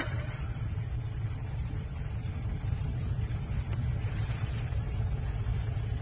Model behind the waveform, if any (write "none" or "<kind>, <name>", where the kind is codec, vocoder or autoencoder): none